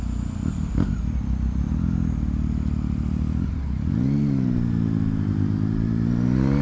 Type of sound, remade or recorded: recorded